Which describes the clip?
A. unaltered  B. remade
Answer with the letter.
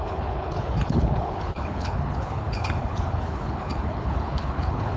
B